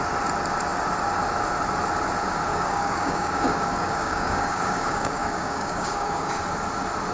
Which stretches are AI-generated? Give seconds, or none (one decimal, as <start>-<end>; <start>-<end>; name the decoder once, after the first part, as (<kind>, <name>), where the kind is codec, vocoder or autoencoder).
2.5-6.4 (codec, DAC)